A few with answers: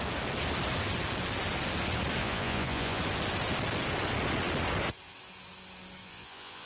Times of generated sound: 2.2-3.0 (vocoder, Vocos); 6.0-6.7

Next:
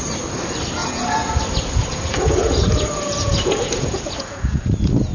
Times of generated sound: 0.8-1.4 (vocoder, Vocos); 1.9-5.1

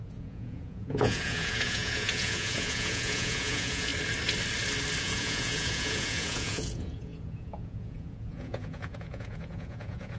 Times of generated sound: 0.0-3.9 (vocoder, Vocos); 5.0-10.2

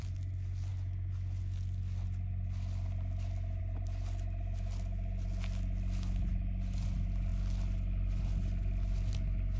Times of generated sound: none